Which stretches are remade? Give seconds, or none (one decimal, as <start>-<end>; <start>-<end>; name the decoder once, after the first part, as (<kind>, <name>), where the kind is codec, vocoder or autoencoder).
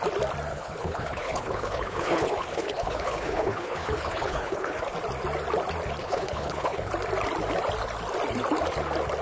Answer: 0.5-4.8 (codec, HILCodec); 6.0-6.9